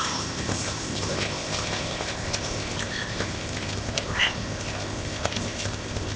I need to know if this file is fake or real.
fake